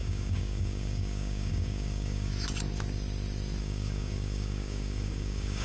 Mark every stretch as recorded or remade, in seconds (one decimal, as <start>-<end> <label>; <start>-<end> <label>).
0.0-2.3 remade; 2.3-3.6 recorded; 3.6-5.6 remade